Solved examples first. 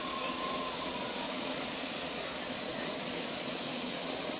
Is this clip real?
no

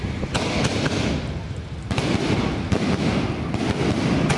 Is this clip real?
yes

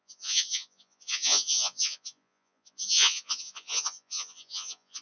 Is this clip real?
no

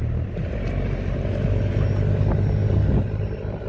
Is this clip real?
yes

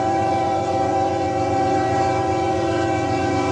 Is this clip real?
no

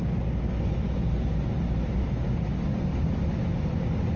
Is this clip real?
yes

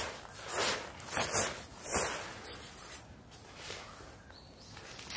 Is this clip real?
yes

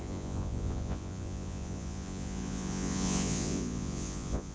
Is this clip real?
no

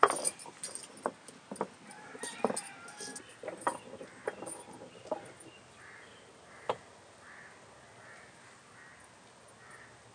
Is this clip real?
yes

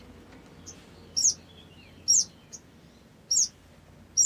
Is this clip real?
yes